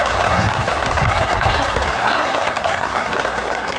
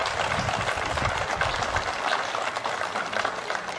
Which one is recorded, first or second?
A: second